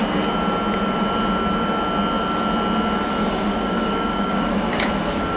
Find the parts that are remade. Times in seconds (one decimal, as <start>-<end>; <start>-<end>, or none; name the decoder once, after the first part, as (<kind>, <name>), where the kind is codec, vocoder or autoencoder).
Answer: 3.2-4.9 (codec, DAC)